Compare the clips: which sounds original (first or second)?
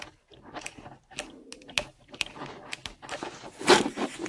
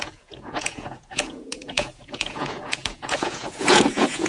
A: first